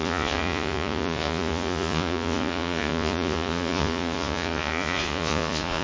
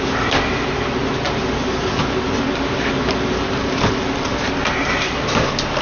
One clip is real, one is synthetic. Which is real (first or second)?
second